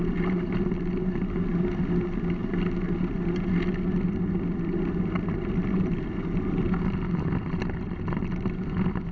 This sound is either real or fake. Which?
real